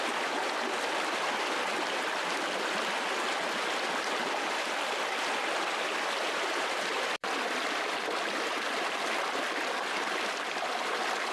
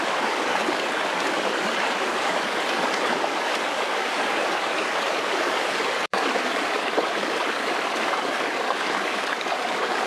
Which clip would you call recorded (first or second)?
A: first